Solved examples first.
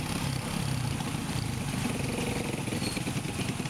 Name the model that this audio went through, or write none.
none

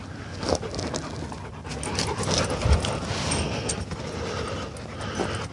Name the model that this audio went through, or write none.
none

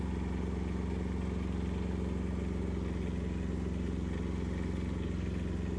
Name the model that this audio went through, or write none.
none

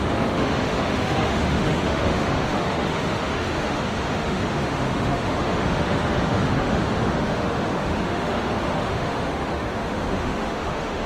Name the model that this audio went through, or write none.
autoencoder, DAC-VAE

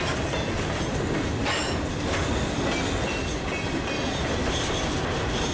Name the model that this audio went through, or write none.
none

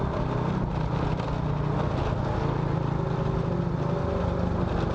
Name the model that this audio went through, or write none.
none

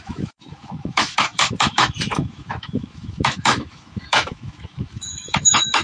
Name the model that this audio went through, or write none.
autoencoder, DAC-VAE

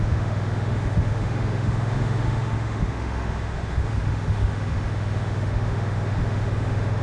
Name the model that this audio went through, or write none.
autoencoder, DAC-VAE